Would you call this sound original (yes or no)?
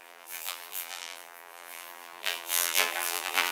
no